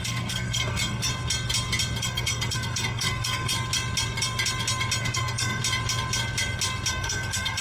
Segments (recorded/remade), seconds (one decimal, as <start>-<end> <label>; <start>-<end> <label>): 0.0-1.1 remade; 1.1-2.0 recorded; 2.0-3.5 remade; 3.5-5.0 recorded; 5.0-5.6 remade; 5.6-6.9 recorded; 6.9-7.6 remade